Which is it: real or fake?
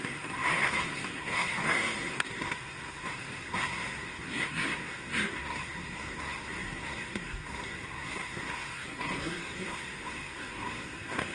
fake